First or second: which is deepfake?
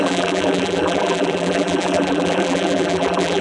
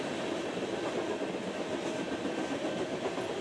first